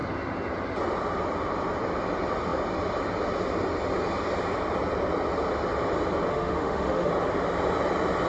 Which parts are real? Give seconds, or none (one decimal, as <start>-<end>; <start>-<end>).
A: 0.0-6.3; 7.1-8.3